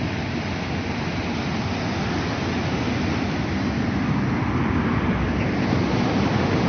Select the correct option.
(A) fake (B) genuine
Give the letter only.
B